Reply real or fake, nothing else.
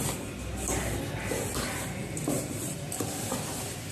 fake